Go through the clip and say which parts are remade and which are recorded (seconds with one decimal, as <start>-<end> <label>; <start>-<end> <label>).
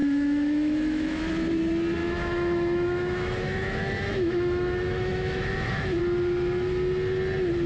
0.0-1.2 remade; 1.2-2.0 recorded; 2.0-6.0 remade; 6.0-7.7 recorded